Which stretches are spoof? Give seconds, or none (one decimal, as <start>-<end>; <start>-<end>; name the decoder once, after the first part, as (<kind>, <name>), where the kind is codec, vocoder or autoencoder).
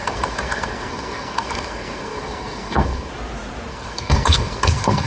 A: 0.0-3.1 (codec, SNAC); 3.7-5.1